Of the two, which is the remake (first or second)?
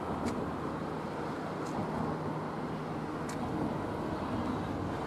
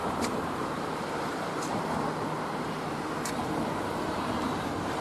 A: second